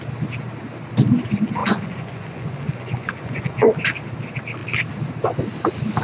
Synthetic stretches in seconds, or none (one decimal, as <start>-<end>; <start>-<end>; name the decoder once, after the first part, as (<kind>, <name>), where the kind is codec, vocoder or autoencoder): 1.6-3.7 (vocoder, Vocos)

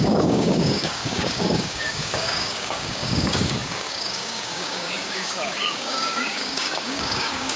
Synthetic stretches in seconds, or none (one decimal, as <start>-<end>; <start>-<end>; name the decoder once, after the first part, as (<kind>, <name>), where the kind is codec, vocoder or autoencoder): 0.0-7.6 (codec, DAC)

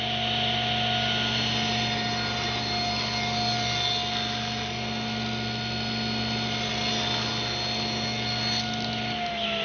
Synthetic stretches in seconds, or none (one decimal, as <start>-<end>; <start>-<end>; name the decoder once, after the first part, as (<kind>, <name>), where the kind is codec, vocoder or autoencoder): none

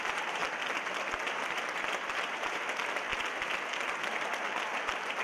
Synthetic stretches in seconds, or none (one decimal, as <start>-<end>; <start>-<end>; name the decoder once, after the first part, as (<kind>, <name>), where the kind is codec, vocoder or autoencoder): 0.0-0.4 (vocoder, BigVGAN v2); 2.1-3.1; 4.6-5.2